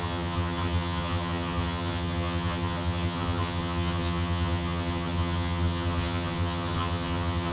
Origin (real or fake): fake